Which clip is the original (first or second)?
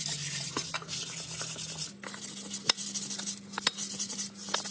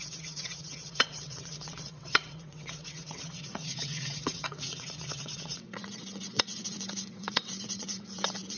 first